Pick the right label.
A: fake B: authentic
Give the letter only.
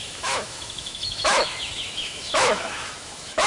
A